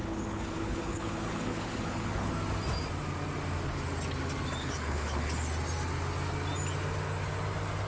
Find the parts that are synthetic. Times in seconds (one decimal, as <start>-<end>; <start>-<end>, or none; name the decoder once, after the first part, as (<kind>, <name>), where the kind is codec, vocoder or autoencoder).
0.0-2.3 (codec, HILCodec); 4.6-5.4